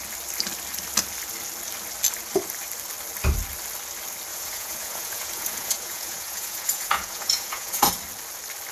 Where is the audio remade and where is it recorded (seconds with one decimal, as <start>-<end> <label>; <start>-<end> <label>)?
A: 0.0-4.3 recorded; 4.3-7.9 remade; 7.9-8.7 recorded